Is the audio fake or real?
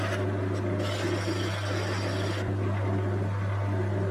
real